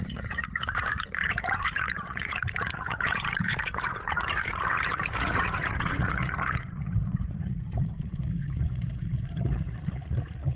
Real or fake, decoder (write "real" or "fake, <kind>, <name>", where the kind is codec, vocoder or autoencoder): fake, vocoder, Vocos